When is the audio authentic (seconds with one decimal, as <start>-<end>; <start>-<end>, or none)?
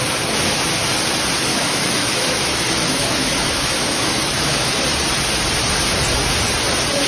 0.0-1.5; 4.8-7.1